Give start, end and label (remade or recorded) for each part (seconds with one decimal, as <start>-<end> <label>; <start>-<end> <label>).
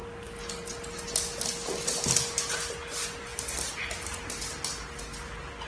0.0-5.7 recorded